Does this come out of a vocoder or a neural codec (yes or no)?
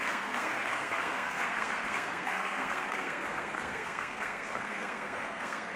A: yes